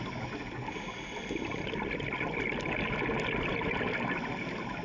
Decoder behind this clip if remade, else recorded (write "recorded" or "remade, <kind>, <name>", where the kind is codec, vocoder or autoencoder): recorded